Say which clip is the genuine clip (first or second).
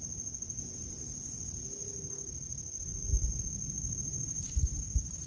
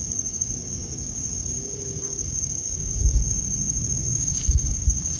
first